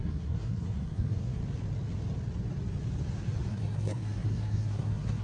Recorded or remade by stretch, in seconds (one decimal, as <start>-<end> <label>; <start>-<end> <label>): 0.0-1.4 remade; 1.4-3.5 recorded; 3.5-5.2 remade